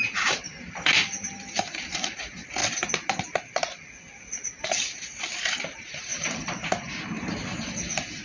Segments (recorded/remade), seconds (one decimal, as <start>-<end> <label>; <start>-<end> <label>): 0.0-2.6 remade; 2.6-4.6 recorded; 4.6-8.2 remade